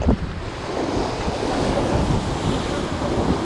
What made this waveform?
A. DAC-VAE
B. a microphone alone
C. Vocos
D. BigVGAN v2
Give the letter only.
D